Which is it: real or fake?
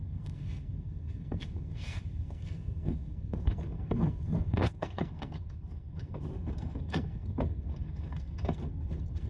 fake